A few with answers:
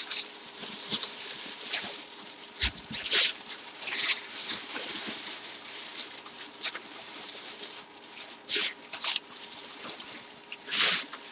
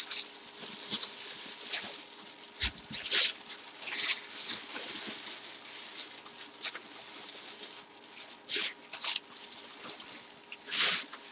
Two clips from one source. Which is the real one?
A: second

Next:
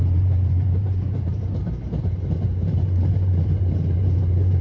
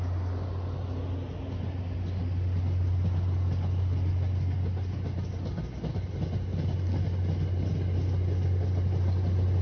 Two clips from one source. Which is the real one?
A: second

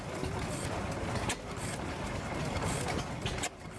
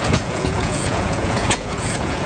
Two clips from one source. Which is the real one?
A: first